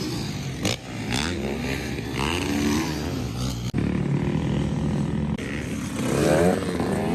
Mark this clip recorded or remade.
recorded